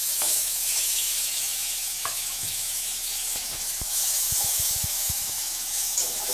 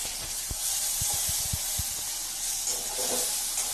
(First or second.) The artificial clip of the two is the first